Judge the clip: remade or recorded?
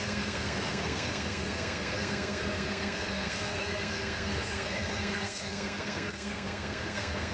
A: remade